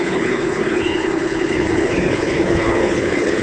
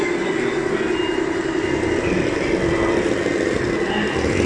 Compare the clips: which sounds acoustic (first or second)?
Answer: second